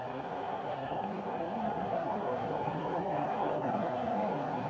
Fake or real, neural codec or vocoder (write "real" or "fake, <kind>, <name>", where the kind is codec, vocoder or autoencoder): fake, codec, SNAC